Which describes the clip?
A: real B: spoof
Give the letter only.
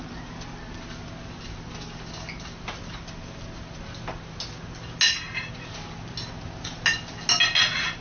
A